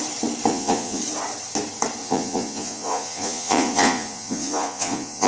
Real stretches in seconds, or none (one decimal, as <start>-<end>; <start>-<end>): 0.0-0.5; 1.0-2.0